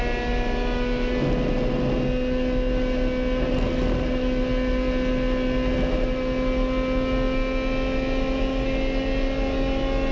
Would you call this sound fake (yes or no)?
no